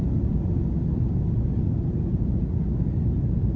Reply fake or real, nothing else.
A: real